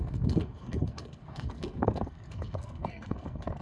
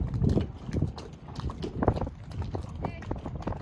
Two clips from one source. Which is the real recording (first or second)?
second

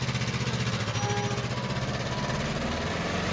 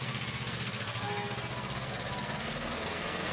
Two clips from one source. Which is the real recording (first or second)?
first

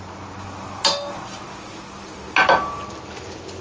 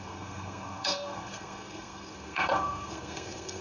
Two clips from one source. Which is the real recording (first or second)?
first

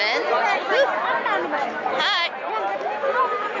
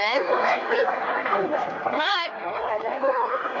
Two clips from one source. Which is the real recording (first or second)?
first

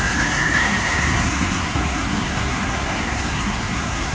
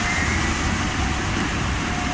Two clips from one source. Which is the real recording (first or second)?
second